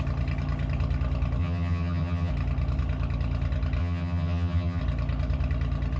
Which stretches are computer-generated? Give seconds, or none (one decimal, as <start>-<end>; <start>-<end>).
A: 1.4-2.3; 3.8-4.8